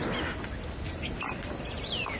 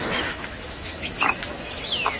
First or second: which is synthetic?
second